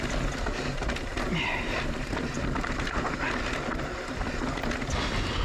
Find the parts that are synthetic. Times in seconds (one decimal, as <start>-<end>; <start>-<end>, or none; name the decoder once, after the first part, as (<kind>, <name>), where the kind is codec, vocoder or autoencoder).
1.1-3.2 (vocoder, BigVGAN v2)